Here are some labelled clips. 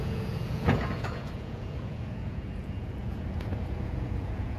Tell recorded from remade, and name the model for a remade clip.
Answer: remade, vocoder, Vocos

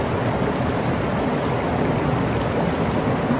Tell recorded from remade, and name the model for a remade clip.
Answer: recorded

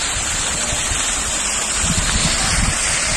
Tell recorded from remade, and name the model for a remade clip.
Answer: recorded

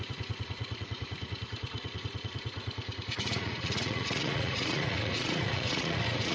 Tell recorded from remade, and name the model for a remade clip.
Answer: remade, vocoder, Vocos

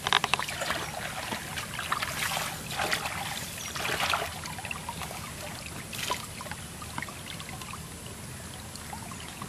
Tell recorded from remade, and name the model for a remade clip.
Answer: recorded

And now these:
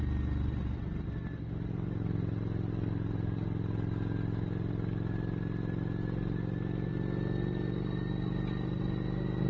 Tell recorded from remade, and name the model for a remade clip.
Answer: recorded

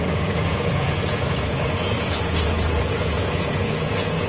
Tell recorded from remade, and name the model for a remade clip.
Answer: remade, vocoder, Vocos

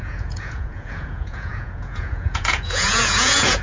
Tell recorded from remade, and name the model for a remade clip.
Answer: remade, vocoder, Vocos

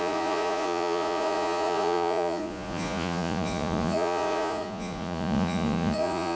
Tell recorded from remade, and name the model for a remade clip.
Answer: remade, vocoder, Vocos